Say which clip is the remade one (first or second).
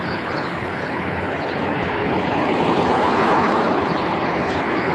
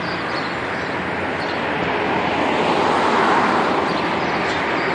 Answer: first